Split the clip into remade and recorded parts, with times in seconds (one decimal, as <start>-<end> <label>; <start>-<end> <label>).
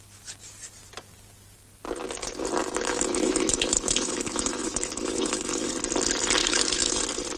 0.0-2.6 recorded; 2.6-5.7 remade; 5.7-6.4 recorded; 6.4-7.0 remade; 7.0-7.4 recorded